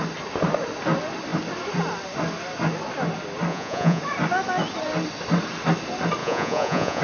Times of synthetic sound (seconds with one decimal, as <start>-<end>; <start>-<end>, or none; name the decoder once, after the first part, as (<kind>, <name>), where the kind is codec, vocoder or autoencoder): 3.5-4.0 (vocoder, Vocos); 6.2-7.0